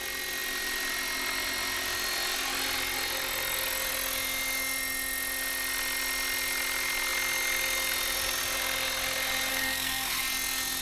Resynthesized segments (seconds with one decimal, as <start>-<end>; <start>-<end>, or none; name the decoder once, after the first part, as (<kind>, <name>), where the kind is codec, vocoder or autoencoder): 9.5-10.2 (codec, SNAC)